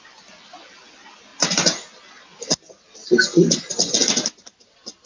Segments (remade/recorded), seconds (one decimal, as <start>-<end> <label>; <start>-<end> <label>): 0.0-5.1 recorded